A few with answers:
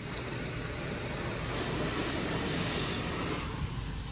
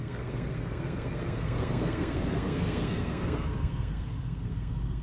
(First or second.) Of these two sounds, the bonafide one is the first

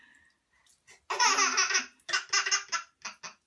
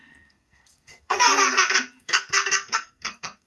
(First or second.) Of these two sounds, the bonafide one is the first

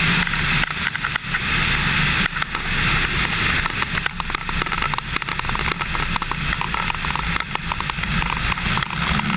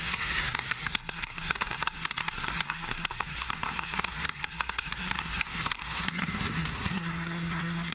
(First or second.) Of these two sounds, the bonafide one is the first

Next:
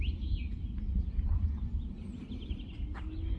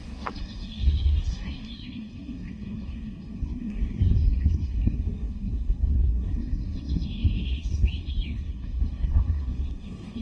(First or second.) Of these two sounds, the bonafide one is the first